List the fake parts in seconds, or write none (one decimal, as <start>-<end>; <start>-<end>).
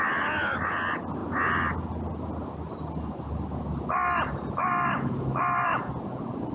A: none